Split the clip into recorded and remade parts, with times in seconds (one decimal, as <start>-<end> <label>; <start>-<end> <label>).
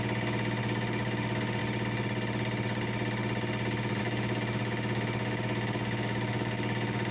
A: 0.0-1.6 remade; 1.6-4.0 recorded; 4.0-7.1 remade